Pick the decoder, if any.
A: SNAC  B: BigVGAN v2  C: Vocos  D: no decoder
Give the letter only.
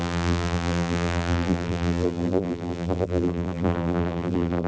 B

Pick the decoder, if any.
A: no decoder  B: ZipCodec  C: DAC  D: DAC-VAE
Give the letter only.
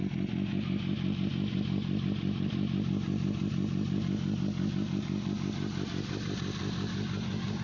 A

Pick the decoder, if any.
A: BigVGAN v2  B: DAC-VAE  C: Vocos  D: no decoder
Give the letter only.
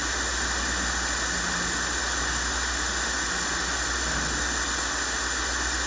D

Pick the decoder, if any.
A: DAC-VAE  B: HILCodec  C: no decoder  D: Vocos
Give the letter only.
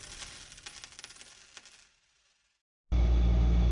C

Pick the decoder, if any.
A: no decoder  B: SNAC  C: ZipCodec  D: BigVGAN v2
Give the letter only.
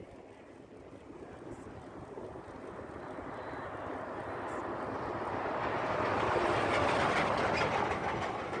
A